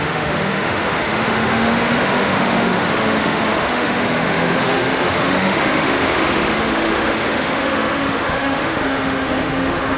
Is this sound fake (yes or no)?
yes